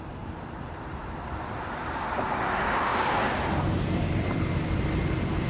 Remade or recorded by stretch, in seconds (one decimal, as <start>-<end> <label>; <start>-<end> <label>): 0.0-5.5 recorded